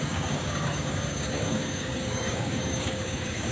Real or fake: fake